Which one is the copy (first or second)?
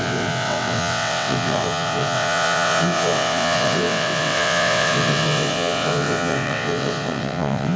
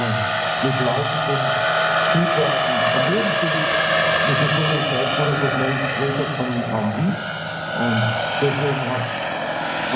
first